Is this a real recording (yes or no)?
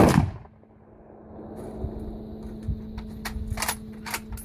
yes